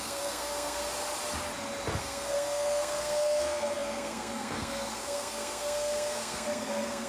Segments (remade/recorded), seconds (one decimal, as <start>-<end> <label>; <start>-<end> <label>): 0.0-0.8 remade; 0.8-2.0 recorded; 2.0-7.1 remade